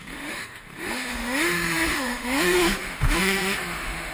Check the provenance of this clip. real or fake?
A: fake